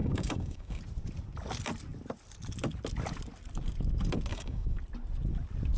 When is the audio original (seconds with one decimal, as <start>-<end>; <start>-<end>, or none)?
0.8-4.3; 4.8-5.8